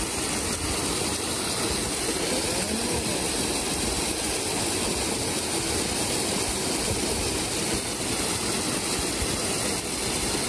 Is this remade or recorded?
recorded